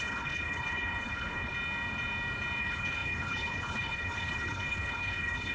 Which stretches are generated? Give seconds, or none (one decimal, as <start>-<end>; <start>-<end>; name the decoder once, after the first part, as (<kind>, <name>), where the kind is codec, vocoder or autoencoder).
0.0-1.5 (codec, HILCodec); 2.6-5.5